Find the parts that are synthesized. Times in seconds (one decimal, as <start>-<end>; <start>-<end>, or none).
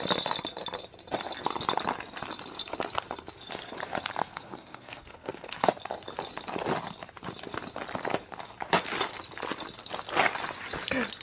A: 4.2-5.7